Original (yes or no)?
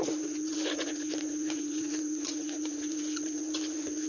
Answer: no